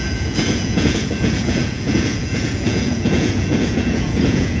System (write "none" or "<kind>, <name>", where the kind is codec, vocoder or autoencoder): vocoder, Vocos